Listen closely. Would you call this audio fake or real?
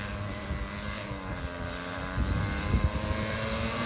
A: real